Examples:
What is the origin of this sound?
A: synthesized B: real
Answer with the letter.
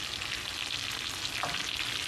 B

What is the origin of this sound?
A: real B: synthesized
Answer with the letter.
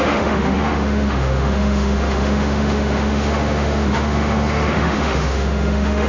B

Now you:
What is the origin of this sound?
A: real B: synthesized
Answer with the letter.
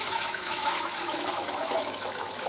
B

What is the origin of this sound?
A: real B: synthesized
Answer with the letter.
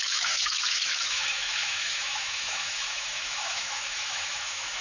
B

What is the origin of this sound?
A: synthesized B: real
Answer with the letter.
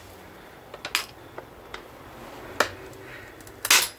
B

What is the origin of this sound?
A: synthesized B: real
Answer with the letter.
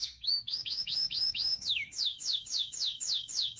A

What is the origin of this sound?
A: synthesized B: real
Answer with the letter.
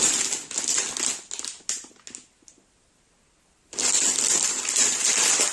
B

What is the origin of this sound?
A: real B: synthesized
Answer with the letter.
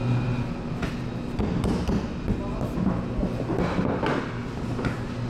A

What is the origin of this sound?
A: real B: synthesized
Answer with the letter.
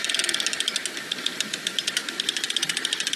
A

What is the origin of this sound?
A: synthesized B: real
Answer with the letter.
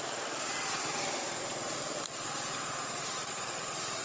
B